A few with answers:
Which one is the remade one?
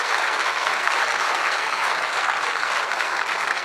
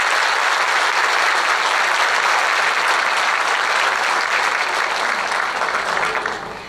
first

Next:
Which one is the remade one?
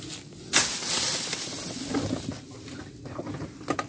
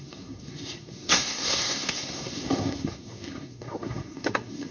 second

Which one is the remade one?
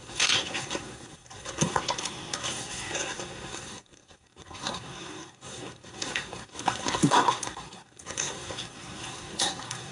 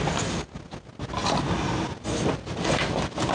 first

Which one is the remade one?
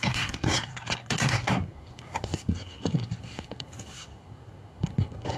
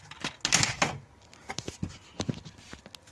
first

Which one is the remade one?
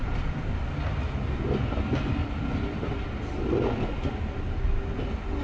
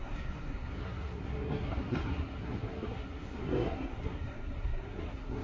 second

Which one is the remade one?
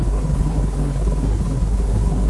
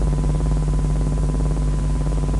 first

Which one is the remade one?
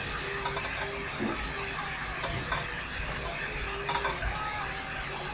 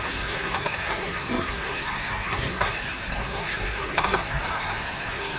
second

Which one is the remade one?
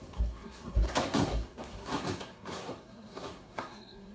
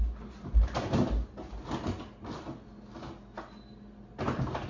first